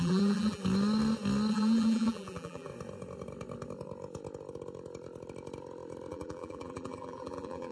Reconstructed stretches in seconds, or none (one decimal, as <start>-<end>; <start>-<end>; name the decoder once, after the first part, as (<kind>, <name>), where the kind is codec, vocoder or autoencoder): 0.0-0.6 (vocoder, BigVGAN v2); 1.5-2.7; 6.1-7.7